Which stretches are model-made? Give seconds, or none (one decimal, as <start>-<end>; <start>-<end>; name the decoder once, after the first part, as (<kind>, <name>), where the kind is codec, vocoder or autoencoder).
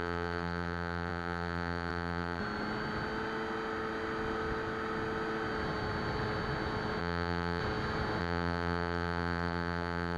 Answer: 0.0-2.4 (vocoder, BigVGAN v2); 7.0-7.6; 8.2-10.2